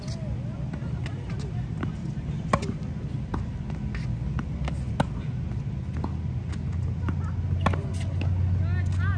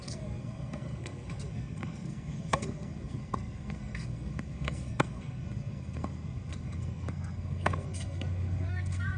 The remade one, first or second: second